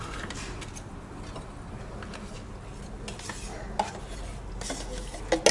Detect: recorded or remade recorded